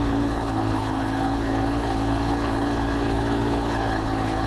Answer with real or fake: fake